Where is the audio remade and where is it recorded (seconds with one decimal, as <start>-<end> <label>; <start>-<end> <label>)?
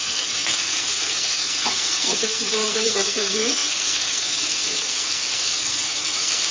0.0-6.5 remade